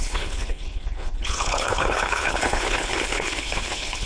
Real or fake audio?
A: fake